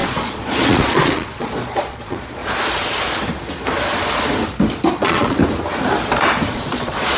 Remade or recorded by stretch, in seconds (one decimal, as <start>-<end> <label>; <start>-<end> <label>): 0.0-2.4 remade; 2.4-4.9 recorded; 4.9-5.4 remade; 5.4-6.5 recorded; 6.5-7.2 remade

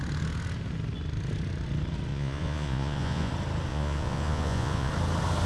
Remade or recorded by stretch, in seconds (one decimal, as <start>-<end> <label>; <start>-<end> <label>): 0.0-2.1 recorded; 2.1-3.3 remade; 3.3-3.7 recorded; 3.7-4.9 remade; 4.9-5.5 recorded